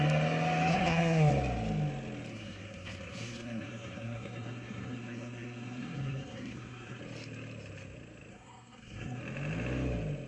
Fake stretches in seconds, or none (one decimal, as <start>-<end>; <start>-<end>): 0.7-1.3; 2.3-7.0; 8.3-9.2

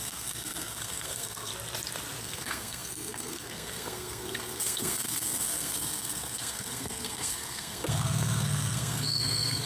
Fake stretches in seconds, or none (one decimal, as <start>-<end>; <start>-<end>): 0.0-1.5; 2.2-9.7